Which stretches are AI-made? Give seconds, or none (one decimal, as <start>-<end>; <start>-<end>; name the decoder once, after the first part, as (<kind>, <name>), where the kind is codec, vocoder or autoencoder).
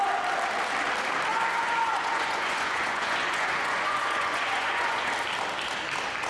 1.3-5.1 (vocoder, Vocos)